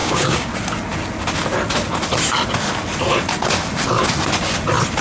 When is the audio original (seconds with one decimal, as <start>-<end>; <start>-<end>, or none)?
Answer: 0.5-5.0